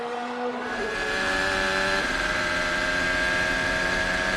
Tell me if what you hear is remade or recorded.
remade